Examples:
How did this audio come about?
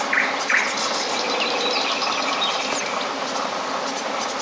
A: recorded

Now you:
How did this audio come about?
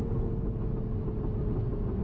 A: recorded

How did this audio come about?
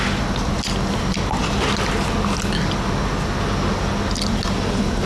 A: recorded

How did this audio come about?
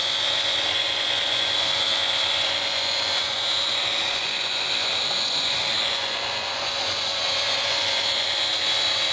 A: remade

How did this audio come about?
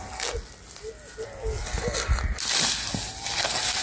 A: recorded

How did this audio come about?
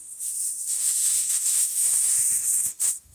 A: remade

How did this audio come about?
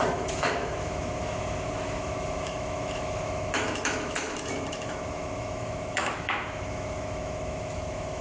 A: remade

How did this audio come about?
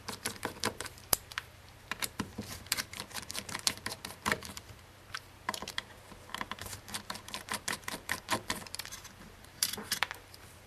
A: remade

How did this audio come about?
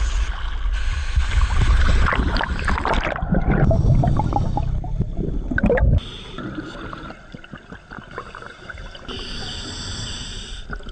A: recorded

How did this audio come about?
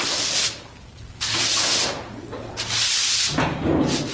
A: recorded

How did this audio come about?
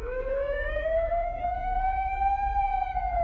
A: remade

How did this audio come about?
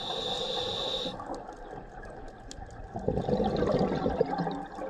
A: recorded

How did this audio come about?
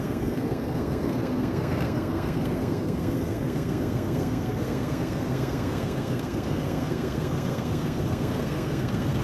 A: remade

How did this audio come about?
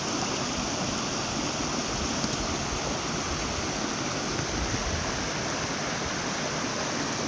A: recorded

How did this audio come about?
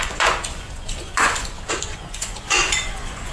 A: remade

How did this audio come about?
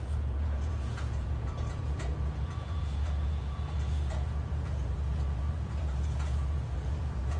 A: remade